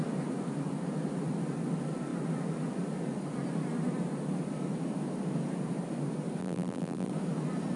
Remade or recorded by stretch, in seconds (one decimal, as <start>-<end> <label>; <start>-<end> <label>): 0.0-6.4 recorded; 6.4-7.1 remade; 7.1-7.8 recorded